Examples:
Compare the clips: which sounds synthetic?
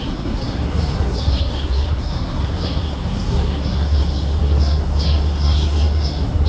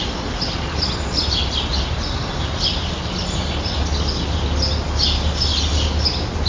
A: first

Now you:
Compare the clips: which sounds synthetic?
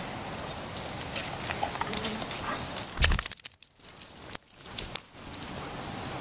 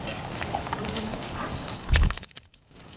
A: second